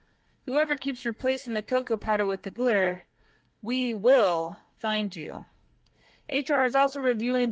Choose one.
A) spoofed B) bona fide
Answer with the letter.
A